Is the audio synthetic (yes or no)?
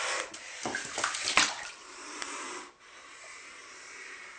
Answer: yes